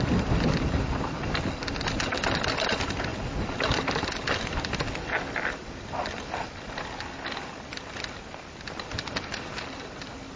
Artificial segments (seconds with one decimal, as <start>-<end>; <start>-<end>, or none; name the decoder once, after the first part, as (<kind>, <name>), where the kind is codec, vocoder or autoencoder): none